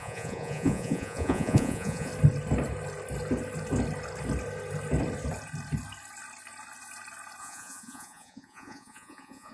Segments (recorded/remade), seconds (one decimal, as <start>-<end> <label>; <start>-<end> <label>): 0.0-2.1 remade; 2.1-7.4 recorded; 7.4-9.5 remade